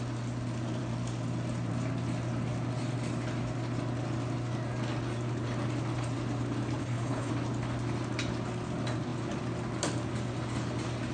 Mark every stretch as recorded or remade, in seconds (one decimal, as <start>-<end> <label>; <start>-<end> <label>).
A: 0.0-6.8 recorded; 6.8-7.3 remade; 7.3-11.1 recorded